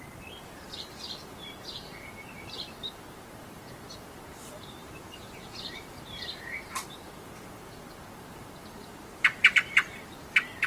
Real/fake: fake